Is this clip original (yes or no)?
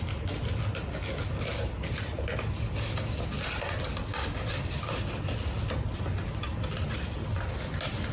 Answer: yes